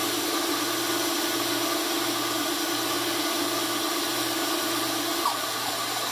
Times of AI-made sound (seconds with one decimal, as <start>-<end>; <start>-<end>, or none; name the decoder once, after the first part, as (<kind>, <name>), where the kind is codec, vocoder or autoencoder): none